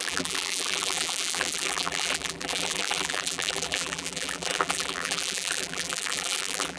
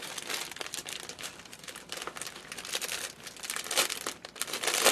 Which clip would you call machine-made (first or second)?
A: first